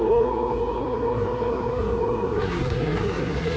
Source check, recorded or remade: remade